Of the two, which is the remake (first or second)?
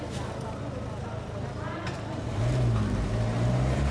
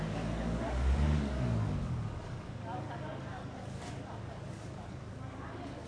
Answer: second